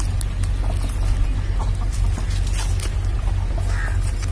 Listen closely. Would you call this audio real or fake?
real